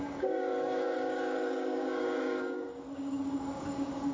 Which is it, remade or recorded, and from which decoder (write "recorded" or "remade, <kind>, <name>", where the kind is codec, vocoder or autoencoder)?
remade, codec, DAC